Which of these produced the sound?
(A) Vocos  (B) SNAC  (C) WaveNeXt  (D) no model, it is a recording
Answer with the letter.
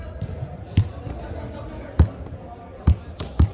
D